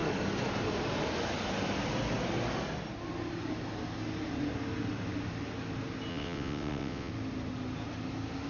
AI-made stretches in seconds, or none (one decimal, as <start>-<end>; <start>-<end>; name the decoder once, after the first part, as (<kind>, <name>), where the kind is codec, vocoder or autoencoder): 6.1-7.1 (vocoder, WaveNeXt)